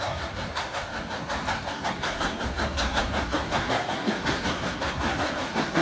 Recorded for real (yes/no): no